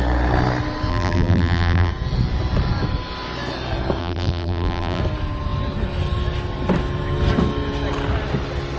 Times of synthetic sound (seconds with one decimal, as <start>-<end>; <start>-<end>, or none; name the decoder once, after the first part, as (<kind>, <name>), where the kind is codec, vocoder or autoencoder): 0.9-1.9 (vocoder, BigVGAN v2); 4.0-5.0